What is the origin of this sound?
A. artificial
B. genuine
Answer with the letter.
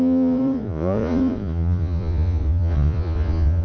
A